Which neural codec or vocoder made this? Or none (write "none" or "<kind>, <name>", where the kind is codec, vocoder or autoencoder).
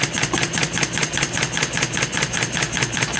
none